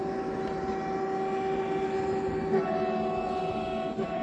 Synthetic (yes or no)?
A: no